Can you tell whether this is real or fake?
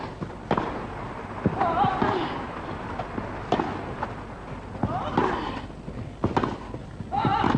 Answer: real